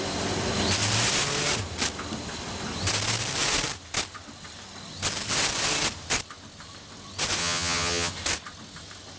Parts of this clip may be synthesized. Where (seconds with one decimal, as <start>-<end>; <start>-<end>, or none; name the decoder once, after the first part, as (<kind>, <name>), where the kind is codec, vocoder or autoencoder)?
7.4-8.1 (vocoder, HiFi-GAN)